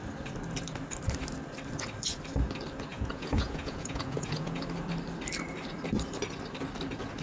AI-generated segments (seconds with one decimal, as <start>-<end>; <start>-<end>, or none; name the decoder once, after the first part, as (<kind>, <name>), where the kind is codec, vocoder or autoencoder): 2.9-4.6 (vocoder, Vocos)